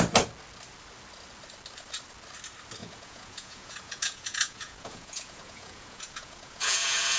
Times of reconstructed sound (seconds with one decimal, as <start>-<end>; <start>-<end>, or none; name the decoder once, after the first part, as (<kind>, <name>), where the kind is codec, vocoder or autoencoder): 2.8-7.2 (vocoder, Vocos)